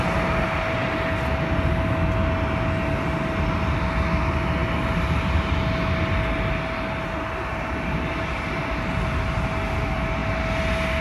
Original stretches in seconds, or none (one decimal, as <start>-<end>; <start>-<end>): 0.0-11.0